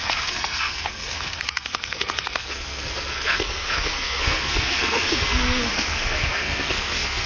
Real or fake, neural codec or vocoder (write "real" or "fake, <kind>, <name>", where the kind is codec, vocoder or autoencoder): fake, codec, SNAC